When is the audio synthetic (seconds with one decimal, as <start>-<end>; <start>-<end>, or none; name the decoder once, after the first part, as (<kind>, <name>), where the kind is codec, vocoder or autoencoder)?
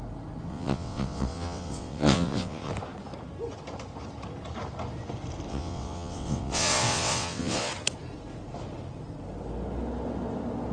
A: 0.5-2.7 (vocoder, WaveNeXt); 5.5-7.7